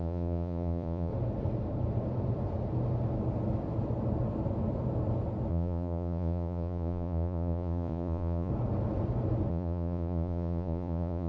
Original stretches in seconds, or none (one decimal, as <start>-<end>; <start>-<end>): 1.1-5.5; 8.5-9.5